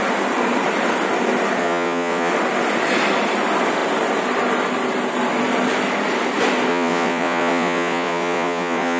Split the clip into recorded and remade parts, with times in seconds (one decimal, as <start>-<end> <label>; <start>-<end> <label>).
0.0-1.6 recorded; 1.6-2.3 remade; 2.3-6.7 recorded; 6.7-9.0 remade